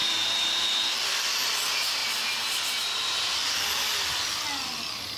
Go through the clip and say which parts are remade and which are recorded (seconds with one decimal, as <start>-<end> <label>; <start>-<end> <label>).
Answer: 0.0-5.2 recorded